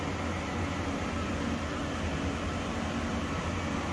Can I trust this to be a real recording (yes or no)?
yes